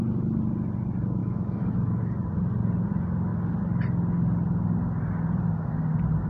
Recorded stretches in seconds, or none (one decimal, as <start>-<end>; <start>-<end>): 0.0-1.2; 2.0-6.3